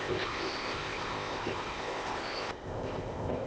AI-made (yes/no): yes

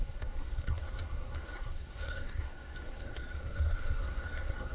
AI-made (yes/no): yes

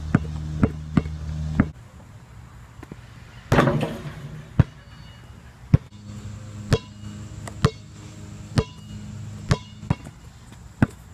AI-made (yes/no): no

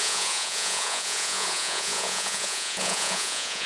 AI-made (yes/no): yes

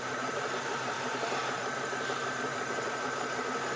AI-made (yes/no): yes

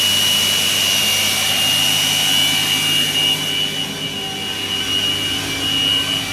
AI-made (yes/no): no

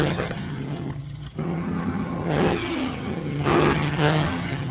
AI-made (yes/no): yes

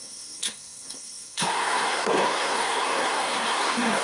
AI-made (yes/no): yes